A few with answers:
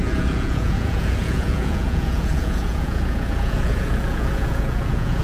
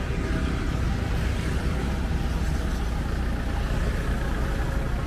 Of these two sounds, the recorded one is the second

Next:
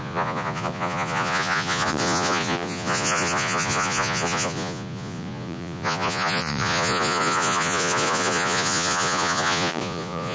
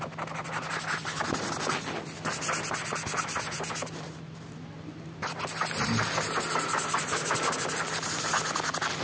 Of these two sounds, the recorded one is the second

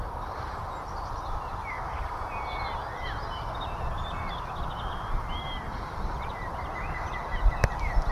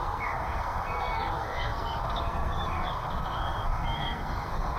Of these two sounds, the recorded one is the first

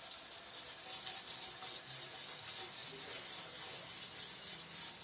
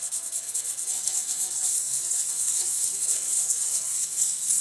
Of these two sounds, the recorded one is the first